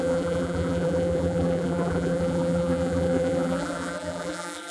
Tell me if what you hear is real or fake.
fake